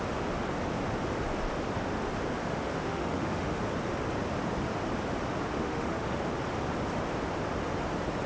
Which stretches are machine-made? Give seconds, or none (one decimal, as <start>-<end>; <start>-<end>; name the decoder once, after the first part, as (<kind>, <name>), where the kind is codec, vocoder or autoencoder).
2.4-3.6 (autoencoder, DAC-VAE); 5.6-6.2